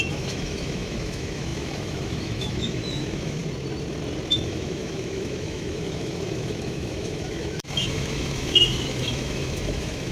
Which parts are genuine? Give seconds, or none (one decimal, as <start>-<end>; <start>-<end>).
3.4-4.3